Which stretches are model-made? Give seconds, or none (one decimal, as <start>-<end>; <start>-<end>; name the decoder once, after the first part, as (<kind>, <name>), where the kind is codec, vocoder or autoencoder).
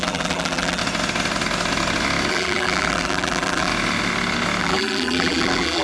0.0-0.8 (vocoder, BigVGAN v2); 2.3-3.7; 4.6-5.8